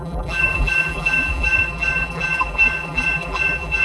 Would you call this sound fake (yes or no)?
yes